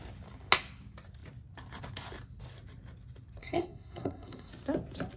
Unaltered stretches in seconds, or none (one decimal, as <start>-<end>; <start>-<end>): 0.0-3.4; 4.5-5.2